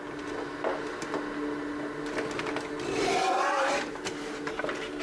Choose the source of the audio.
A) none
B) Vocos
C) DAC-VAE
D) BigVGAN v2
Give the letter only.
A